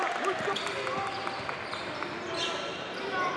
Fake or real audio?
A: real